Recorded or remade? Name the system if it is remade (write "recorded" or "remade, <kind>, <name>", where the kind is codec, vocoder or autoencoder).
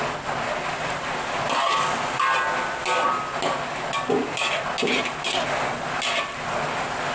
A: recorded